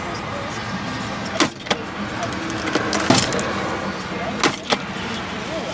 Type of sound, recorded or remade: recorded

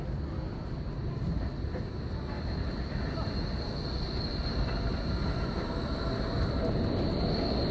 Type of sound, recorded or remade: recorded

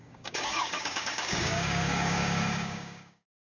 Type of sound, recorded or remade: remade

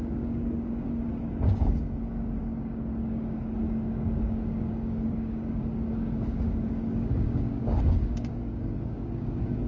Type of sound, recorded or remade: remade